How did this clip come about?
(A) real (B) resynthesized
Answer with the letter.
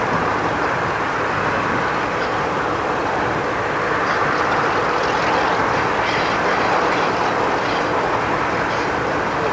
A